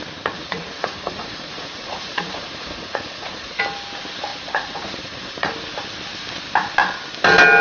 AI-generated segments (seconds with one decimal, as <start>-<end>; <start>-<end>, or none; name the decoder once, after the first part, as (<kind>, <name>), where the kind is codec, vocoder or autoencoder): 0.4-3.6 (vocoder, Vocos); 4.3-5.5